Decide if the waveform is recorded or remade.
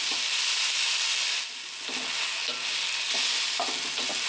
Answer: recorded